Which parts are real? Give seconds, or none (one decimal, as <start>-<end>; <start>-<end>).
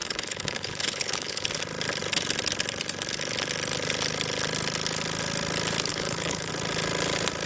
1.5-5.9; 6.5-7.5